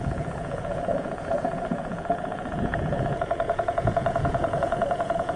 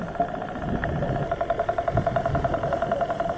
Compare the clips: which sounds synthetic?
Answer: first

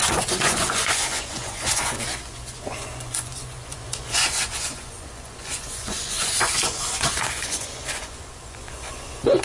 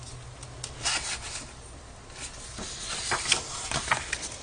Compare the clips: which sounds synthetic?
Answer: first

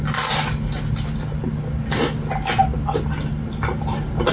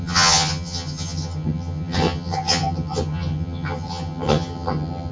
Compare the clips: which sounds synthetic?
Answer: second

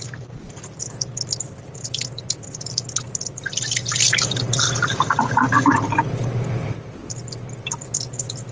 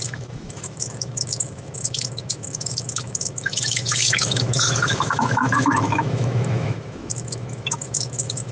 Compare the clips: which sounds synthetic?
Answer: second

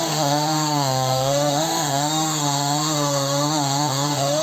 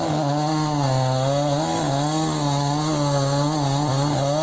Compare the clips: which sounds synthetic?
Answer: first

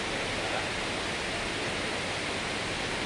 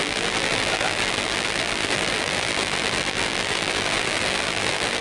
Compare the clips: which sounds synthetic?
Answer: second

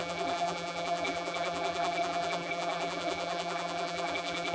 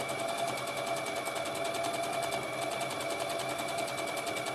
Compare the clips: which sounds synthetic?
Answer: first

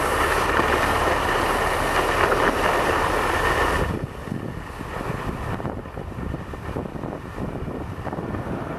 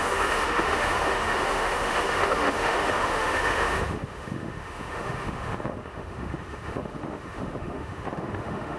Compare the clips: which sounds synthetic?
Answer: second